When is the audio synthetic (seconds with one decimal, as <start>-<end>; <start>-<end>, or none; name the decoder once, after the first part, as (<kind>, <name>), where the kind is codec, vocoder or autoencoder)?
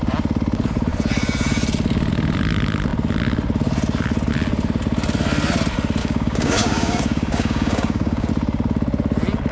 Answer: 6.0-8.3 (codec, DAC)